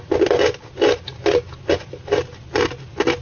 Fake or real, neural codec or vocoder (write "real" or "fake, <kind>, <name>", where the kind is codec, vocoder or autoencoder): real